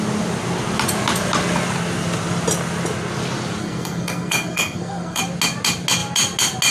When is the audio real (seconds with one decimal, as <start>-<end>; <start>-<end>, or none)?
0.0-3.6; 5.2-6.7